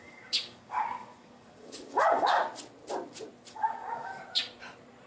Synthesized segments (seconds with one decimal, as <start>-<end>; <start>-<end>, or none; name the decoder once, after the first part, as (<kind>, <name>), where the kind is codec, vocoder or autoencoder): 0.0-2.4 (codec, DAC); 3.5-4.1

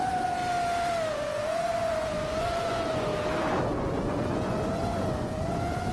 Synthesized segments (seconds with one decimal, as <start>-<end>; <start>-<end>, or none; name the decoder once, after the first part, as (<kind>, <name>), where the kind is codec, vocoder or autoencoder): 0.0-0.4 (vocoder, Vocos); 1.1-3.1; 3.7-5.9

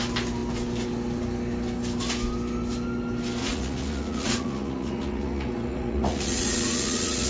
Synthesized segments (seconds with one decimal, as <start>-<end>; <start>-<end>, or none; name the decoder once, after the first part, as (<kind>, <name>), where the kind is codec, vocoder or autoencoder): 3.4-7.3 (vocoder, Vocos)